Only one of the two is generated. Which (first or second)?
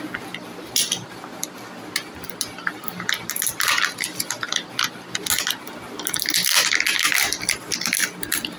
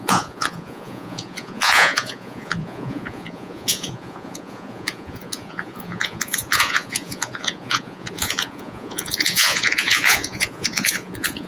second